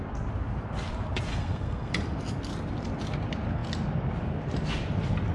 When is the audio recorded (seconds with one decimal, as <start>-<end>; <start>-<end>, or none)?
0.0-1.3; 1.9-5.3